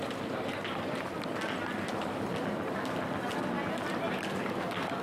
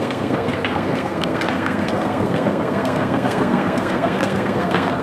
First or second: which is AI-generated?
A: second